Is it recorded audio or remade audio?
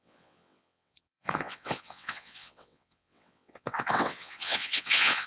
remade